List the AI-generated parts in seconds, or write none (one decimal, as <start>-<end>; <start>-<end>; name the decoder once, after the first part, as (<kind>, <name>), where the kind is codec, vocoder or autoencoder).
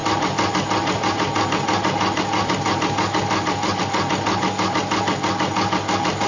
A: none